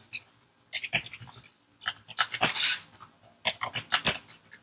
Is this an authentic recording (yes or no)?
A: yes